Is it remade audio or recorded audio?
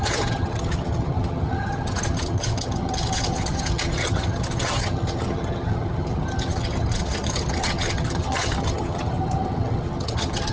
remade